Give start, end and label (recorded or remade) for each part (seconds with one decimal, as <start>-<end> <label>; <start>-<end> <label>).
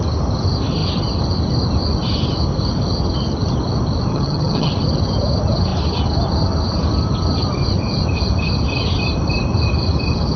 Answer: 0.0-4.1 recorded; 4.1-4.7 remade; 4.7-10.4 recorded